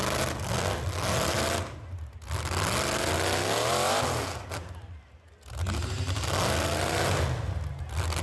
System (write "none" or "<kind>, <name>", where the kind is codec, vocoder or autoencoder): none